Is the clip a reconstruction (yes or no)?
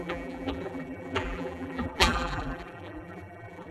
yes